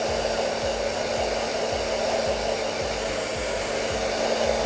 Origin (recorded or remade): recorded